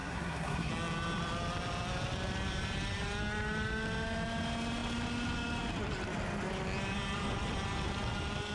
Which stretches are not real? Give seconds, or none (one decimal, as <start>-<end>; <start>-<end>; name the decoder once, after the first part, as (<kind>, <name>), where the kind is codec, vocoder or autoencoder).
0.0-0.7 (codec, SNAC)